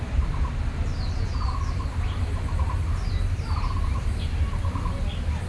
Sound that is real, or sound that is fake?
real